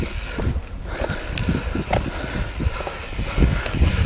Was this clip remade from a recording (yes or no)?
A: no